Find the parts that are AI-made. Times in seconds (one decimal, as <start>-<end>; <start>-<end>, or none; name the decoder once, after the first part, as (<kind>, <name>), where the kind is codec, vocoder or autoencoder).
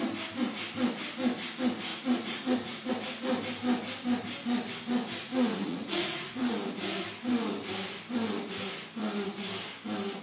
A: 1.9-2.9 (vocoder, Vocos); 5.2-6.5